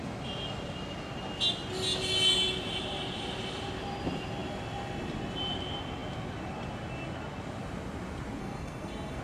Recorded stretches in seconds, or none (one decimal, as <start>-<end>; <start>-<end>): 0.0-8.4